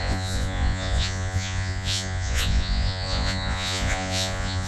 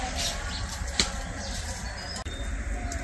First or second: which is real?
second